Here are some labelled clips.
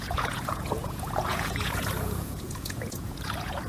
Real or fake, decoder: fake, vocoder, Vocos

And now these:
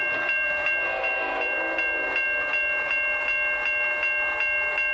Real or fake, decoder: real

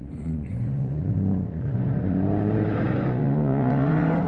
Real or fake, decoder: fake, vocoder, Vocos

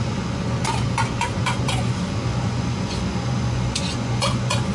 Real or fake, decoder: fake, vocoder, Vocos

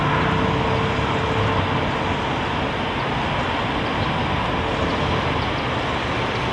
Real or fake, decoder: real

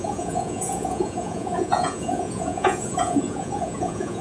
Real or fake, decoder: fake, vocoder, Vocos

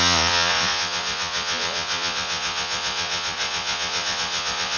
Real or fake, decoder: fake, vocoder, Vocos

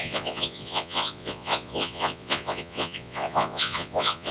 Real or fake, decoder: fake, vocoder, Vocos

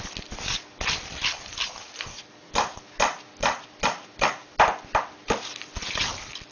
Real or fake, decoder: real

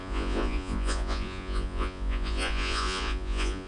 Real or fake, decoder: fake, vocoder, Vocos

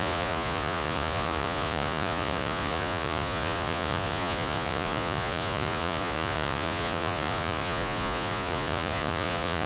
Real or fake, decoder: fake, vocoder, Vocos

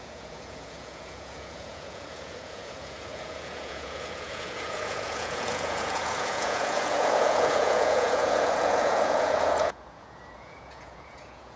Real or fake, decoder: fake, vocoder, Vocos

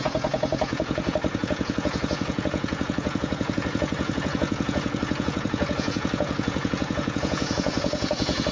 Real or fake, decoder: fake, vocoder, Vocos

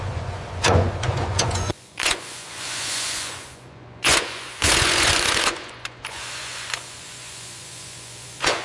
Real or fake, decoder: fake, vocoder, Vocos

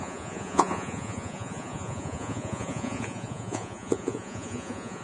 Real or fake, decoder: fake, vocoder, Vocos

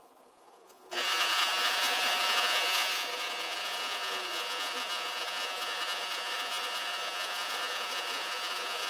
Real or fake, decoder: fake, vocoder, Vocos